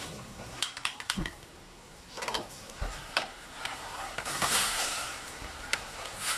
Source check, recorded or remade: remade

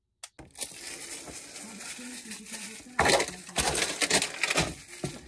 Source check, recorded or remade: recorded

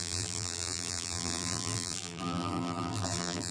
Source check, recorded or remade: remade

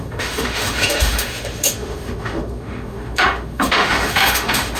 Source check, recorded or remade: remade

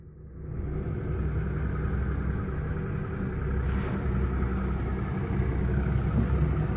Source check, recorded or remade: recorded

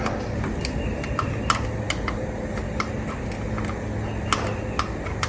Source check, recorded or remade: recorded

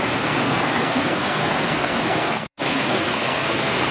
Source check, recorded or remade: remade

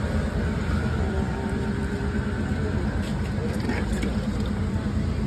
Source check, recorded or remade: recorded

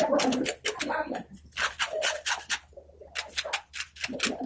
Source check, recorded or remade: recorded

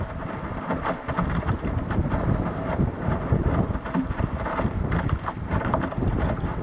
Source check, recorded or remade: recorded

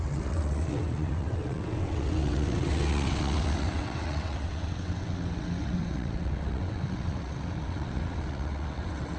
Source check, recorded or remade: remade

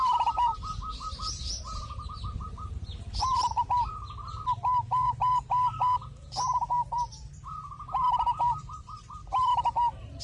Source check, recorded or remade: remade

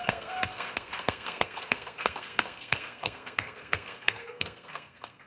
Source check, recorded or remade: remade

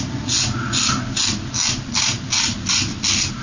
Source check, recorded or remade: recorded